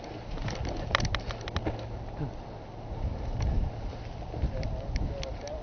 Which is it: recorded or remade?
recorded